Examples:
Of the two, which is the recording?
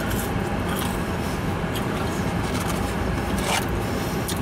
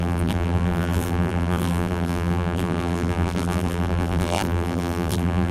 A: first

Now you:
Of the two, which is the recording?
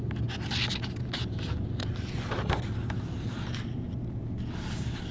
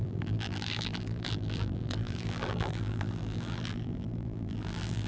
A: first